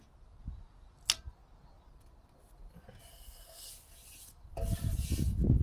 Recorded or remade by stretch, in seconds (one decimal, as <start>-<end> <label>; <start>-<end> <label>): 0.0-3.1 recorded; 3.1-3.7 remade; 3.7-5.6 recorded